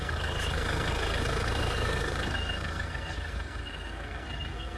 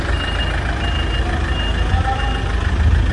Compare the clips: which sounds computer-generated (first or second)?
first